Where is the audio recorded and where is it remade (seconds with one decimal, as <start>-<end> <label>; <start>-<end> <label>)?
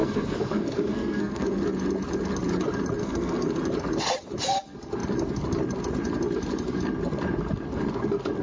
0.0-1.6 remade; 1.6-3.0 recorded; 3.0-3.6 remade; 3.6-8.4 recorded